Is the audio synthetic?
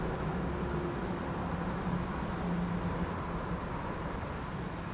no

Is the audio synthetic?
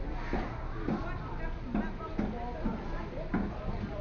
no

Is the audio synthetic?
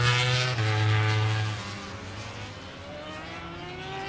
no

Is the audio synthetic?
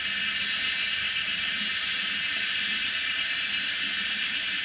no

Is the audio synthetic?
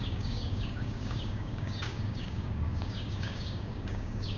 yes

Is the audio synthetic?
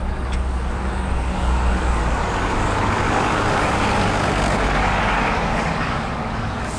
yes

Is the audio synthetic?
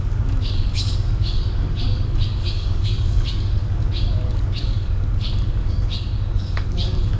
yes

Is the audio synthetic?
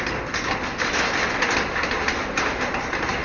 no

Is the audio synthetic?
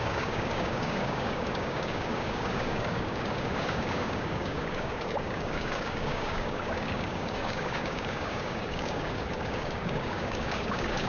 yes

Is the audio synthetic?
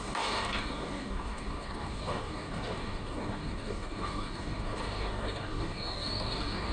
yes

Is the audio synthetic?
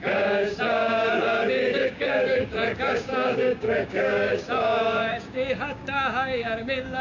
yes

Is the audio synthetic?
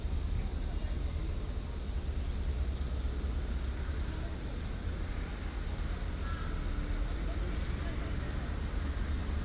no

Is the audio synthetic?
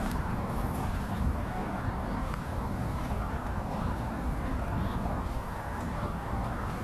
yes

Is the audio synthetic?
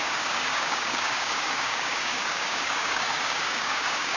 yes